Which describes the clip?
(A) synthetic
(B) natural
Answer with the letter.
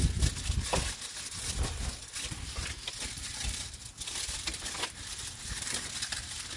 B